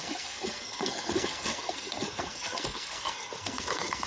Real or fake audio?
fake